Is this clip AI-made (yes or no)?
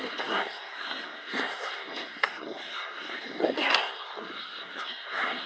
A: yes